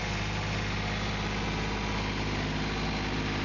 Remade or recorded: recorded